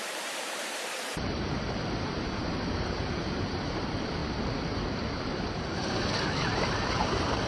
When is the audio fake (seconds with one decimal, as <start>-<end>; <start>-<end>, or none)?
0.0-4.2; 5.2-7.5